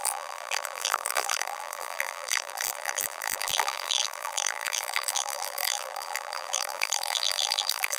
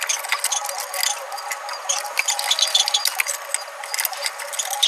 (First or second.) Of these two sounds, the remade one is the first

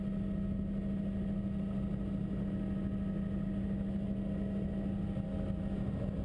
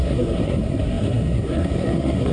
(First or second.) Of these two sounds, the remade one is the second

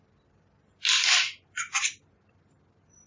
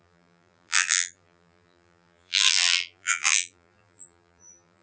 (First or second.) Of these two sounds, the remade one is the second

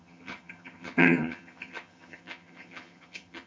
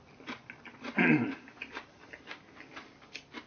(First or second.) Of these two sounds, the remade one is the first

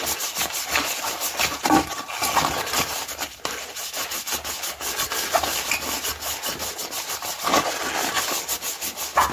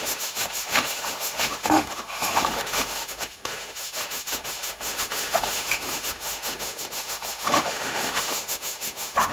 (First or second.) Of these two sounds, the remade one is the second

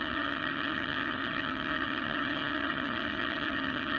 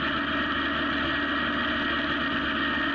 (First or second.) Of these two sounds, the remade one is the first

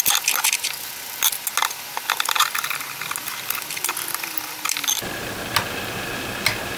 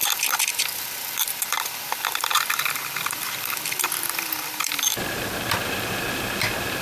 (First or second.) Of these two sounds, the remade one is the second